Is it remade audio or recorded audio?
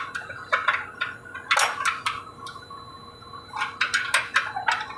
recorded